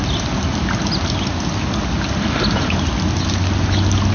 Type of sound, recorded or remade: recorded